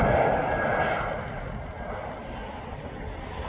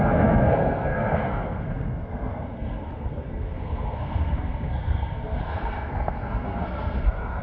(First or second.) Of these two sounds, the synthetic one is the second